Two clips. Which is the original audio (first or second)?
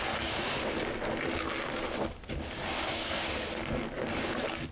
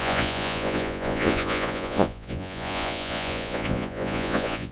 first